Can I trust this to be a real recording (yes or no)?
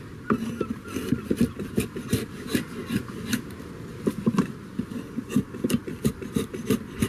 yes